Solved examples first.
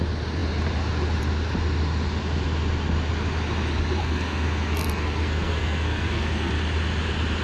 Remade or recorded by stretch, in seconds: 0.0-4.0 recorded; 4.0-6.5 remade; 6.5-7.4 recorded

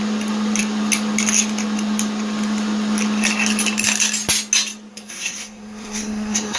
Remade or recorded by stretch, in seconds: 0.0-4.9 recorded; 4.9-6.6 remade

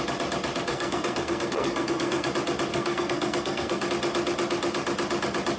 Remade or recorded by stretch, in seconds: 0.0-0.7 recorded; 0.7-2.3 remade; 2.3-2.7 recorded; 2.7-3.9 remade; 3.9-5.6 recorded

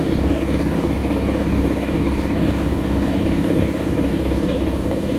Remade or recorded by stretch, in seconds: 0.0-5.2 remade

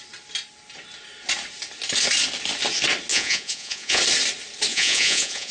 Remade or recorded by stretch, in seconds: 0.0-3.1 recorded; 3.1-4.0 remade; 4.0-4.7 recorded; 4.7-5.5 remade

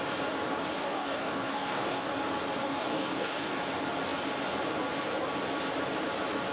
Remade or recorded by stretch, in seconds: 0.0-0.8 recorded; 0.8-2.2 remade; 2.2-2.6 recorded; 2.6-3.6 remade; 3.6-6.5 recorded